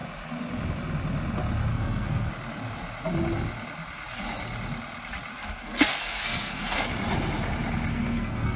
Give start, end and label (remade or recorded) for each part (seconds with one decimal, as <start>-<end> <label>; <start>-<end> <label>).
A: 0.0-1.7 recorded; 1.7-2.3 remade; 2.3-5.3 recorded; 5.3-6.9 remade; 6.9-7.9 recorded; 7.9-8.6 remade